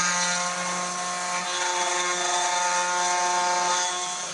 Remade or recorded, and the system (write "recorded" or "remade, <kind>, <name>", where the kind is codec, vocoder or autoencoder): recorded